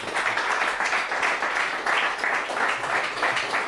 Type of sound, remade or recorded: recorded